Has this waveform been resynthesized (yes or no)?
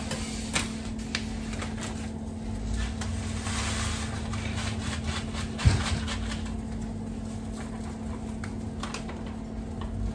no